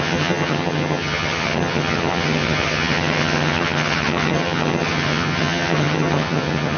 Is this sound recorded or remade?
remade